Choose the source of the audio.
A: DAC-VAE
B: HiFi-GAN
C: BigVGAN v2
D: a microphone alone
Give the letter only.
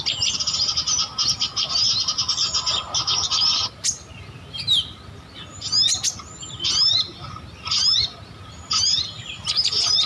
D